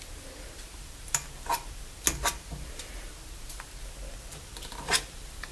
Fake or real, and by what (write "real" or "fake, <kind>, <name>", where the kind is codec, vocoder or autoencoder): real